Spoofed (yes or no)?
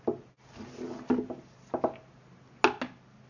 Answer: no